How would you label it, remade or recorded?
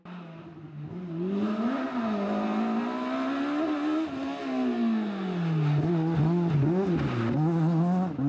recorded